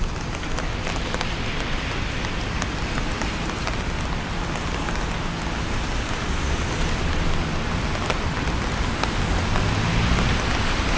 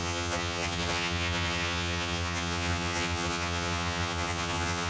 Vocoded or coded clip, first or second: second